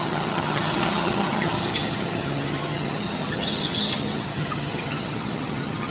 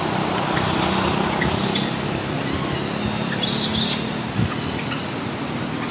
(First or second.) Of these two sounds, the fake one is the first